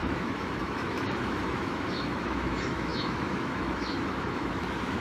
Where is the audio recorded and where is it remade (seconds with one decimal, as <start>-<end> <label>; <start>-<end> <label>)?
0.0-5.0 remade